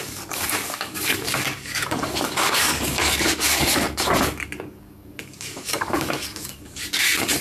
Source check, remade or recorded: remade